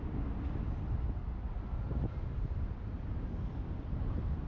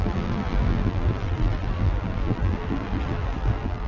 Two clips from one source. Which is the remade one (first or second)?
second